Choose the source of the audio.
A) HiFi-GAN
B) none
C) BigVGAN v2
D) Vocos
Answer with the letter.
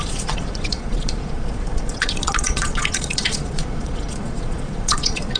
D